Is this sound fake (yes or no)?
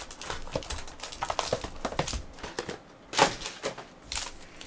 no